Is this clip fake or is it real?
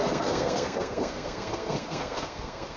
fake